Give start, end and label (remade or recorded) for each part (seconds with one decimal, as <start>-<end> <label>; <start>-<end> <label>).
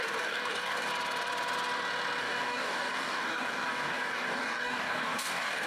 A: 0.0-0.9 remade; 0.9-2.2 recorded; 2.2-5.7 remade